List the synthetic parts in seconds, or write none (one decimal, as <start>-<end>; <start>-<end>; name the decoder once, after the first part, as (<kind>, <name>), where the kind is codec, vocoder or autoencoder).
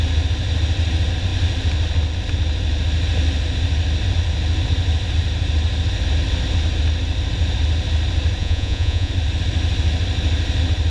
8.4-9.1 (vocoder, Vocos)